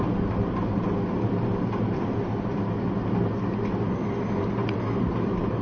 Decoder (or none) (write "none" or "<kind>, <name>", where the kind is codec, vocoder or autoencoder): none